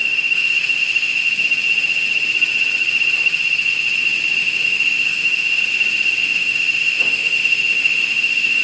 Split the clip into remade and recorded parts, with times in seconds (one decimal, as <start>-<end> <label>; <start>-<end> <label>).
0.0-1.2 remade; 1.2-4.4 recorded; 4.4-5.6 remade; 5.6-6.2 recorded; 6.2-8.6 remade